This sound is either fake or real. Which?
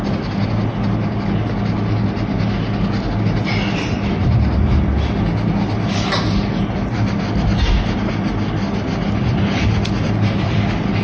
real